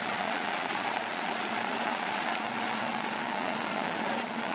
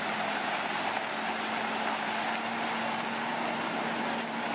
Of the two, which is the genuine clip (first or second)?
second